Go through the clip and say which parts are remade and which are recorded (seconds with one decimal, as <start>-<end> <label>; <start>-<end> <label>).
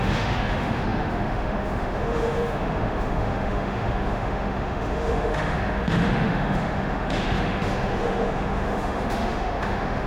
0.0-10.1 remade